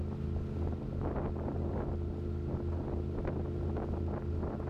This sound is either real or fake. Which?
real